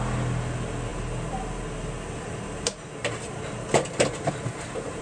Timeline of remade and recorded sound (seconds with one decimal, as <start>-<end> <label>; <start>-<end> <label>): 0.0-5.0 recorded